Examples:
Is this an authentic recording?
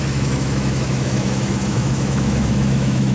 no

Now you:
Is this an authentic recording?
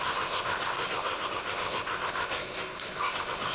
no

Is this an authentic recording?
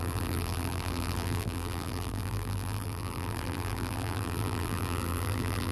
no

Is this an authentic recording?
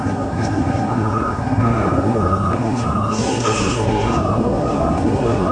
no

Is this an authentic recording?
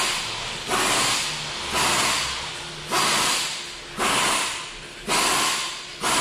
yes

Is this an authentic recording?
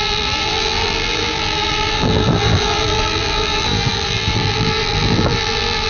no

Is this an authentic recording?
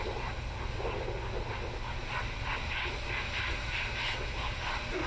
yes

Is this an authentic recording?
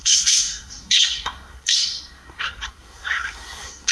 no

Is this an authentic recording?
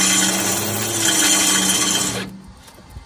yes